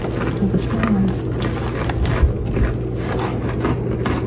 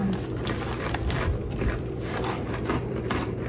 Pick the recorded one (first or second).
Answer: first